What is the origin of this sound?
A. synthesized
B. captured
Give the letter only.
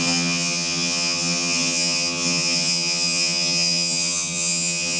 A